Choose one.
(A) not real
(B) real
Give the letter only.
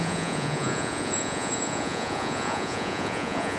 A